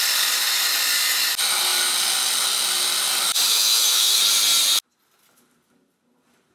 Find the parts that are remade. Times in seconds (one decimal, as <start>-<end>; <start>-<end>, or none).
3.5-4.2